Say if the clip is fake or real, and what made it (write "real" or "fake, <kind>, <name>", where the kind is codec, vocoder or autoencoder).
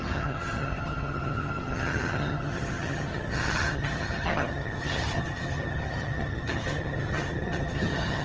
fake, vocoder, HiFi-GAN